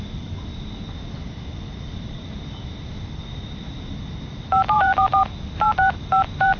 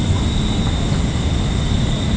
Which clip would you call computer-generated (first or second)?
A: first